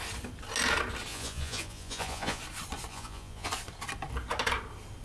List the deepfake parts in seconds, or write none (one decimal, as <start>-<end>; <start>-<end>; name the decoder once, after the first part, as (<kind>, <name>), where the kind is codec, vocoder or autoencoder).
1.1-2.4 (vocoder, Vocos); 2.9-3.5